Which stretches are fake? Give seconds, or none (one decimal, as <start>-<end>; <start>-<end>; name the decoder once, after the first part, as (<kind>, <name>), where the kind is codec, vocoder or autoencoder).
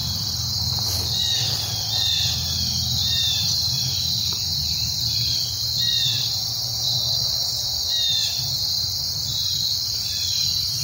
3.0-4.0 (vocoder, BigVGAN v2); 4.6-7.8